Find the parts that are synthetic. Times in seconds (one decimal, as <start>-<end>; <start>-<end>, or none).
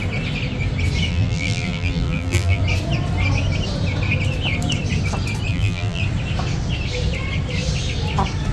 1.1-2.6; 5.5-6.0